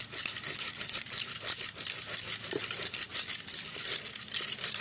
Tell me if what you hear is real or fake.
real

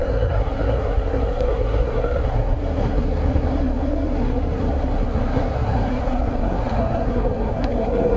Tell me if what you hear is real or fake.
fake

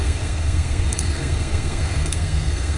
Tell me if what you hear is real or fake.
fake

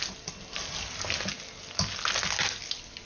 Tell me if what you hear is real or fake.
real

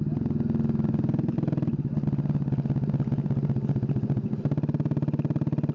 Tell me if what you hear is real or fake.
real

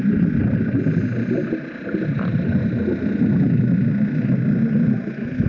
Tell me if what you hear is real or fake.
real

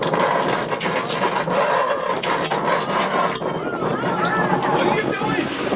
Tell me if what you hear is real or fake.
real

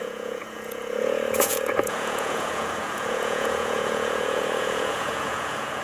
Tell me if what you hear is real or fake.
fake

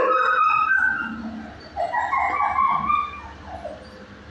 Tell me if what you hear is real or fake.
real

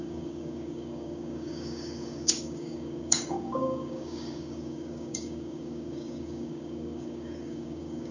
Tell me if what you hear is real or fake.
fake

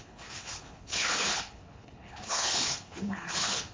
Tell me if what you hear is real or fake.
fake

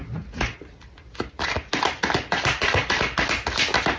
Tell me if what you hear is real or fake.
real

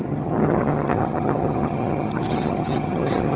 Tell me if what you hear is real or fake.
fake